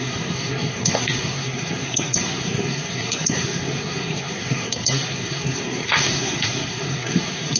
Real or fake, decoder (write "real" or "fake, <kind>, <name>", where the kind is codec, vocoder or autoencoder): fake, codec, SNAC